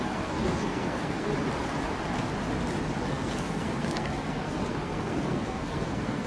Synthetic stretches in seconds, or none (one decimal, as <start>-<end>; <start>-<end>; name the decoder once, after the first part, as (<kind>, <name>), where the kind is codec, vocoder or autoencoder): 0.0-1.3 (codec, SNAC); 3.1-6.3